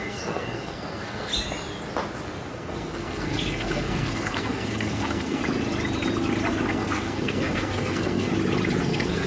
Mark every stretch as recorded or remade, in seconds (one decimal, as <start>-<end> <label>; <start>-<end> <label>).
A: 0.0-1.3 remade; 1.3-2.5 recorded; 2.5-5.4 remade; 5.4-6.7 recorded; 6.7-8.3 remade; 8.3-8.8 recorded; 8.8-9.3 remade